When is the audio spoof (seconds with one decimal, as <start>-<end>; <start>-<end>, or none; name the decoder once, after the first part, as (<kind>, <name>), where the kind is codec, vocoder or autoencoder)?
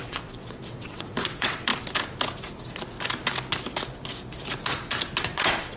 0.0-1.7 (vocoder, WaveNeXt); 5.2-5.8